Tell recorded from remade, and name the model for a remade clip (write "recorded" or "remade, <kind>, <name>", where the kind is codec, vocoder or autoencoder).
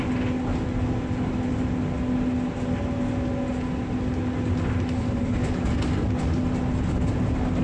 recorded